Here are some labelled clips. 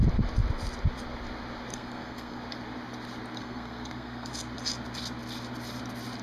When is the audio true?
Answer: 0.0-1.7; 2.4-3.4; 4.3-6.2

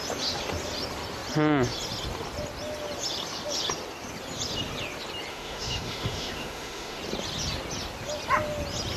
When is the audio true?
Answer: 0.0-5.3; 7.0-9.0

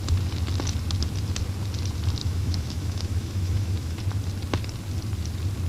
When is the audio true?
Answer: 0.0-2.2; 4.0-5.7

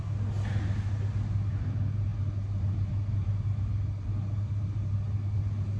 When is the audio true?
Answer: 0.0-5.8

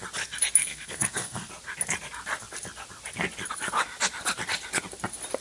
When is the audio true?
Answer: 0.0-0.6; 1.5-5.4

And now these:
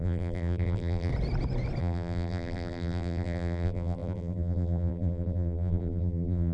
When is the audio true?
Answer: 1.1-1.8

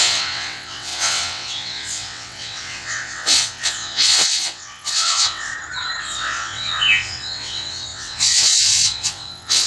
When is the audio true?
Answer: 5.5-6.0